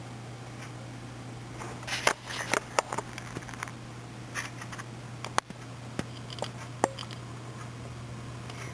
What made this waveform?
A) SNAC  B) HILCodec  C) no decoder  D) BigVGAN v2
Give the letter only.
C